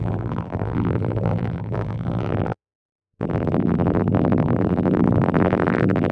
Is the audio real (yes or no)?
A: no